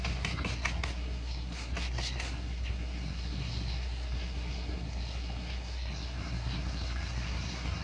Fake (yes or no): yes